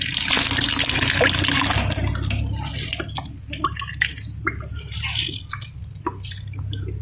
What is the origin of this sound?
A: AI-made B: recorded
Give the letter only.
B